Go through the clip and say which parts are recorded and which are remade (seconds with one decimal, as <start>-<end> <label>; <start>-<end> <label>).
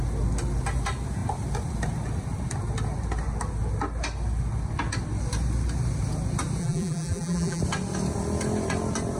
0.0-6.6 recorded; 6.6-7.6 remade; 7.6-9.2 recorded